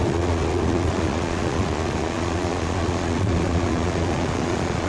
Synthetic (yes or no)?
yes